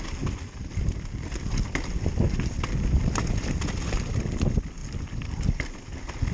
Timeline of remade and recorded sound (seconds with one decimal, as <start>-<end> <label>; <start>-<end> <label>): 0.0-6.3 recorded